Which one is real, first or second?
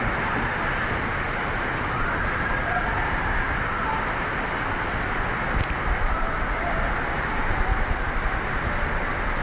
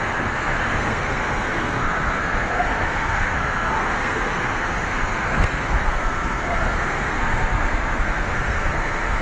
first